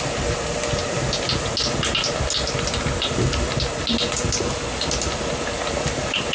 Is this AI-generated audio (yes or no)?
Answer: no